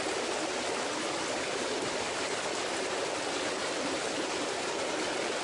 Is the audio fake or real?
real